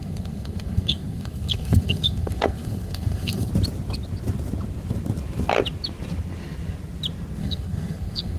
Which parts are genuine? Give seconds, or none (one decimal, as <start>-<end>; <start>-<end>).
3.5-7.4